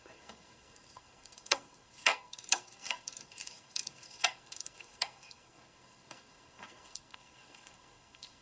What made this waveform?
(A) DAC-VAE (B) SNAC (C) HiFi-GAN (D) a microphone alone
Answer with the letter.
B